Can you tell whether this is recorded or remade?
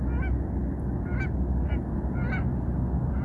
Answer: recorded